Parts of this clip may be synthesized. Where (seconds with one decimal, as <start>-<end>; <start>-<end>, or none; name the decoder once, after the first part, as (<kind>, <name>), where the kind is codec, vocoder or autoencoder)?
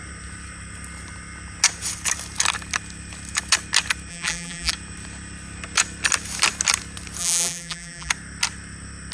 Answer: 4.1-4.7 (vocoder, BigVGAN v2); 7.2-8.1